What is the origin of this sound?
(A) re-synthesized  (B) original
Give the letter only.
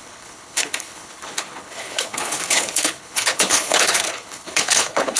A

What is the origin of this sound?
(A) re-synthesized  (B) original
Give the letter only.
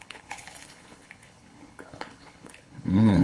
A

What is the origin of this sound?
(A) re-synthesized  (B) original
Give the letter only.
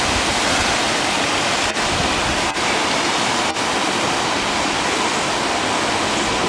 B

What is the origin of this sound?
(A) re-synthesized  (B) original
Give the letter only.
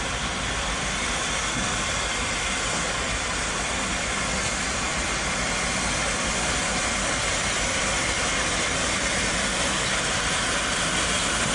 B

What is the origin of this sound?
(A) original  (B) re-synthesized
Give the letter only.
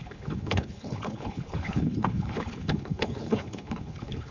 B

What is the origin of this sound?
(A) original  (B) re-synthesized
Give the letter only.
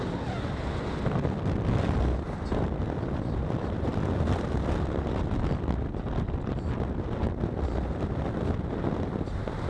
A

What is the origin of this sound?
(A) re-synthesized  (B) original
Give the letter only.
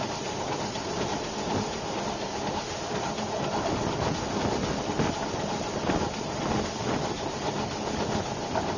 B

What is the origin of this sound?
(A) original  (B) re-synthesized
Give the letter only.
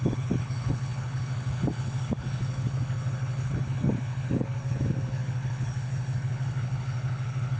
B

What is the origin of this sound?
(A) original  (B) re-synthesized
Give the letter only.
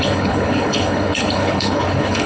B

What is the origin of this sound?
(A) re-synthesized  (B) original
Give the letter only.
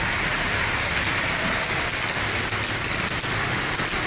B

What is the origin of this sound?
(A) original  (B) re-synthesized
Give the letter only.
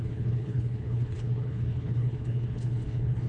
B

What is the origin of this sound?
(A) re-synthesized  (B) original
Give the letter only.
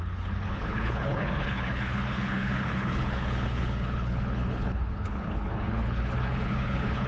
A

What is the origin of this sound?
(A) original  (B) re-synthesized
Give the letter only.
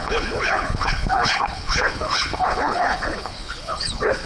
B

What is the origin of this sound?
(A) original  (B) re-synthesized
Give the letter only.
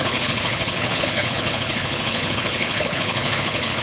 B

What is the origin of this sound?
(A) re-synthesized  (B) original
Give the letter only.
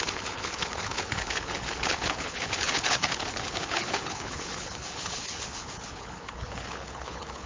A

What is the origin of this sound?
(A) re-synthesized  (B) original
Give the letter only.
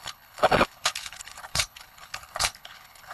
A